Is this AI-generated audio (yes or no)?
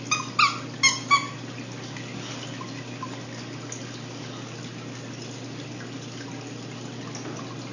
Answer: no